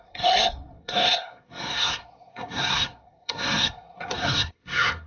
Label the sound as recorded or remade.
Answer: remade